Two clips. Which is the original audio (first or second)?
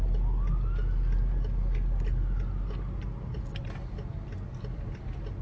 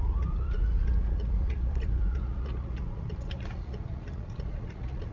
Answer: first